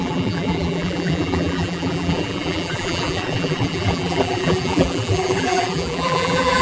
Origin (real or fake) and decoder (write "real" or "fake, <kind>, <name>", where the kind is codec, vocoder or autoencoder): fake, vocoder, BigVGAN v2